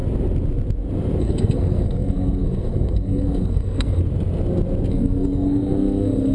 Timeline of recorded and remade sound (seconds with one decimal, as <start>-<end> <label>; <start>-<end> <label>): 0.0-1.2 recorded; 1.2-4.0 remade; 4.0-4.9 recorded; 4.9-6.3 remade